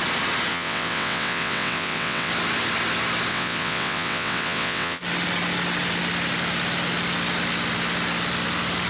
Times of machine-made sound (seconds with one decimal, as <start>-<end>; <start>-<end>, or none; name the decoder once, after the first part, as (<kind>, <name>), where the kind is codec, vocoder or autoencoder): 0.5-2.3 (vocoder, WaveNeXt); 3.3-5.0